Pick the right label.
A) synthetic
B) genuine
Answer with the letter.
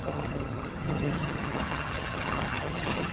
A